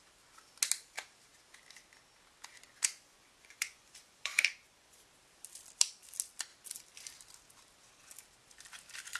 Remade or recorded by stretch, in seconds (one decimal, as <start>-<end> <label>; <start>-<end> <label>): 0.0-2.7 recorded; 2.7-5.0 remade; 5.0-9.2 recorded